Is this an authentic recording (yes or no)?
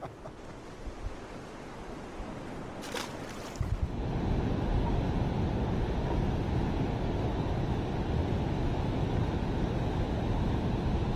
yes